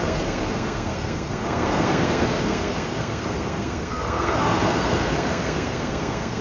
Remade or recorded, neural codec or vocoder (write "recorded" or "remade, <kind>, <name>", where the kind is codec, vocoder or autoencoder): remade, codec, SNAC